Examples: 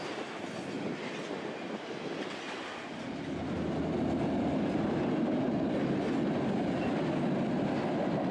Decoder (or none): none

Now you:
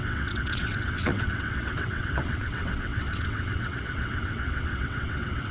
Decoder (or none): vocoder, WaveNeXt